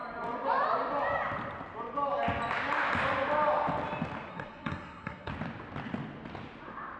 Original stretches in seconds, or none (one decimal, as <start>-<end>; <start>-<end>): 0.0-4.3; 5.3-7.0